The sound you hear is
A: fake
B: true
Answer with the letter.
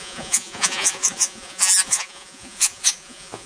A